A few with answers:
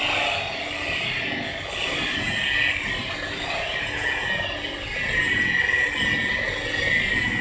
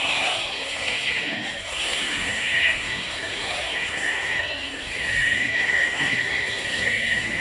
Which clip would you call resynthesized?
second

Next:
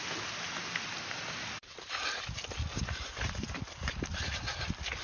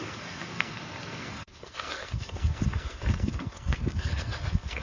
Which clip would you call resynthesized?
second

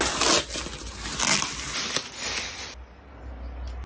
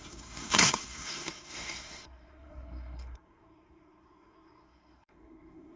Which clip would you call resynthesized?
second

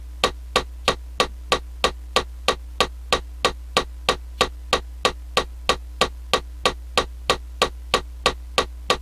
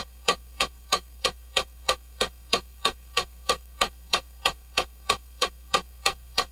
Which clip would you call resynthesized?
second